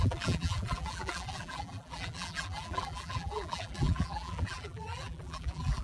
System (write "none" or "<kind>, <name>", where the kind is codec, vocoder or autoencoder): vocoder, BigVGAN v2